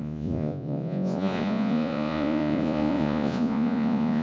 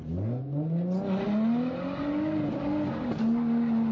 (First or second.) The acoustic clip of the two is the second